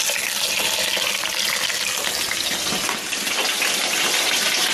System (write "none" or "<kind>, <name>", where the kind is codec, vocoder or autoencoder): none